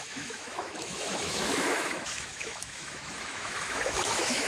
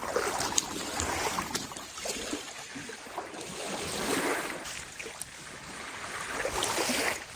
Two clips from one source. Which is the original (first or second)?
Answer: second